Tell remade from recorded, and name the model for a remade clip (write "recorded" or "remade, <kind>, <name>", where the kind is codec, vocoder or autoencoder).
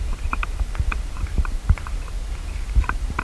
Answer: remade, vocoder, BigVGAN v2